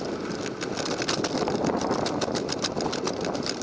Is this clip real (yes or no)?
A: yes